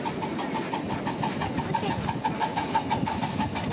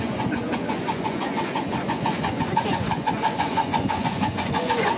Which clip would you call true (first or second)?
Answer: first